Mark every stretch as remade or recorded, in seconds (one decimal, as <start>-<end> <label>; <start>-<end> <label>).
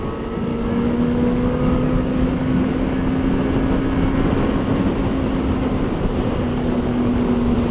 0.0-0.5 recorded; 0.5-3.1 remade; 3.1-6.5 recorded; 6.5-7.3 remade; 7.3-7.7 recorded